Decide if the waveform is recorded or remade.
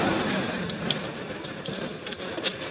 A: remade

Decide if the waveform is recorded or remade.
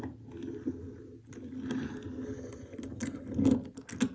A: recorded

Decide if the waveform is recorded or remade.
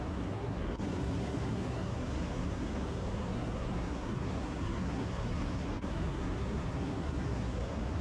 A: remade